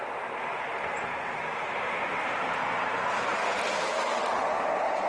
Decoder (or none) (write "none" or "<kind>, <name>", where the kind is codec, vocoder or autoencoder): vocoder, BigVGAN v2